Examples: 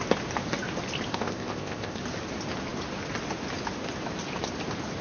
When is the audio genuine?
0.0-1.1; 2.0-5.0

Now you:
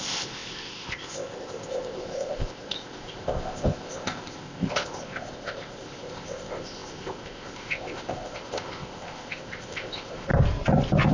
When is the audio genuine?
10.3-11.1

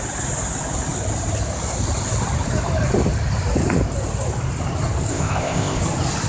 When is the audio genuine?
0.0-5.1; 5.8-6.3

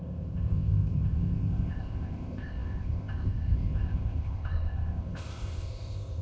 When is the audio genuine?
none

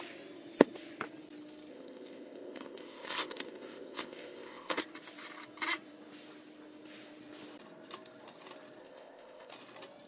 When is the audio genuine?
0.0-1.7; 4.8-8.8; 9.5-10.1

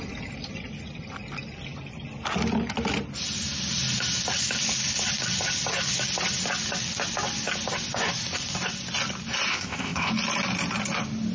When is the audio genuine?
0.0-9.5; 10.1-11.3

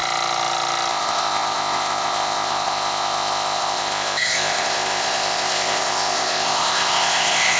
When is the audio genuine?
0.0-0.9

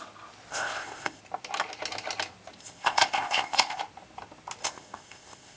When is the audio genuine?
0.0-0.5; 1.2-2.6; 3.8-4.6